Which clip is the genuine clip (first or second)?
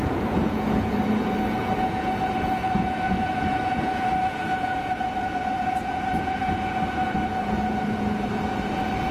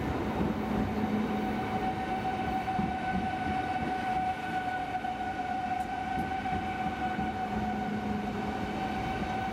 second